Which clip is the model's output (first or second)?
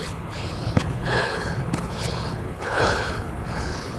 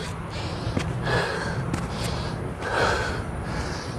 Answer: first